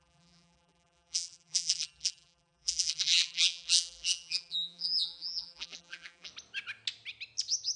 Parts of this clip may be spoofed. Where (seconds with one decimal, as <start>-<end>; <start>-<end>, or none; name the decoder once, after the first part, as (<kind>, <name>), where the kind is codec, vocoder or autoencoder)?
0.0-6.3 (vocoder, BigVGAN v2)